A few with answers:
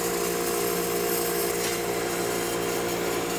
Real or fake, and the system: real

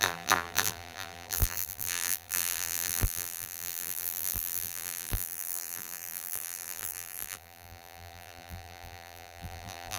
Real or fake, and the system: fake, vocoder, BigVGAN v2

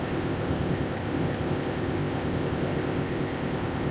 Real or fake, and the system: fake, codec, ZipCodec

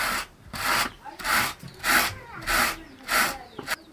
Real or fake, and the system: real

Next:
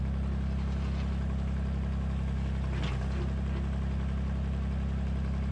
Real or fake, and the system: real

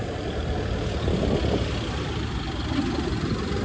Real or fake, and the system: real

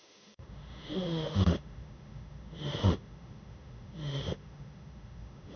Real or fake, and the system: fake, autoencoder, DAC-VAE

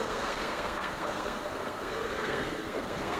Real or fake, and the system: fake, codec, SNAC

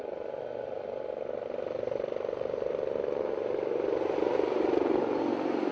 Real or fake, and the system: real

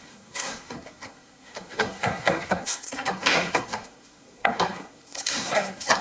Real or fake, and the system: fake, codec, SNAC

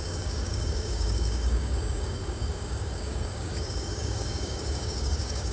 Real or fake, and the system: fake, codec, DAC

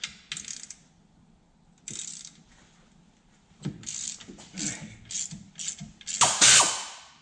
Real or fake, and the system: real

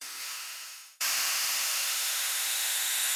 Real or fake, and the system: fake, autoencoder, DAC-VAE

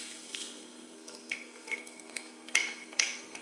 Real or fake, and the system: fake, codec, SNAC